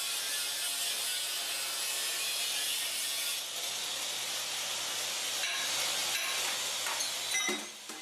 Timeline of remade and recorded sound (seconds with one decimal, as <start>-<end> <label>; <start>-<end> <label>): 0.0-8.0 recorded